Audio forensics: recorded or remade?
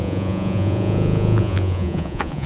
remade